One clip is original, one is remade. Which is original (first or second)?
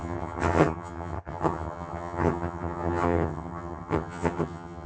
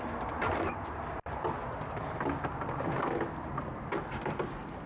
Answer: second